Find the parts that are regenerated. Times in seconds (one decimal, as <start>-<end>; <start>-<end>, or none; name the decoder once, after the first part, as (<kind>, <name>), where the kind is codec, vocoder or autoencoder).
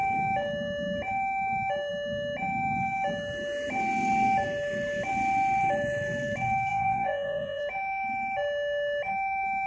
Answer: 6.7-7.6 (vocoder, Vocos)